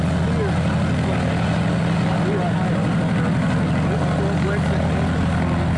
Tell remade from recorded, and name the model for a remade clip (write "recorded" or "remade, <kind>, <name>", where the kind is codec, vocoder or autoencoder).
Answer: recorded